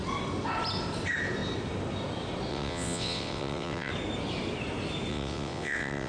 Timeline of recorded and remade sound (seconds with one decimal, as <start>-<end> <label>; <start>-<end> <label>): 0.0-2.5 recorded; 2.5-3.9 remade; 3.9-5.1 recorded; 5.1-6.1 remade